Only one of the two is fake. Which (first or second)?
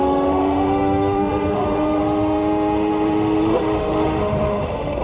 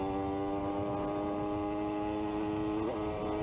first